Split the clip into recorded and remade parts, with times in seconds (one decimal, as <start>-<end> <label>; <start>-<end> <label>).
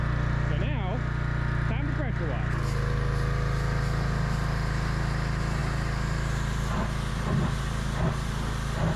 0.0-9.0 recorded